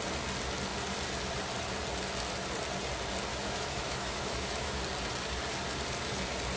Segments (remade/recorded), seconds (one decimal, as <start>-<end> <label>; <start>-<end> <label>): 0.0-3.3 recorded; 3.3-4.8 remade; 4.8-6.6 recorded